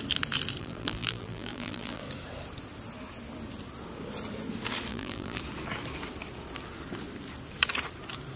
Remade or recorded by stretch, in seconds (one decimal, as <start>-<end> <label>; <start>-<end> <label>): 0.0-0.6 recorded; 0.6-2.0 remade; 2.0-4.9 recorded; 4.9-5.4 remade; 5.4-8.4 recorded